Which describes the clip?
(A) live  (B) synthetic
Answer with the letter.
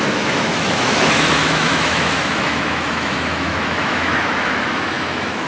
B